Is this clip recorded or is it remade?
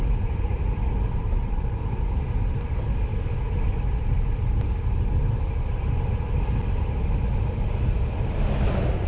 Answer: recorded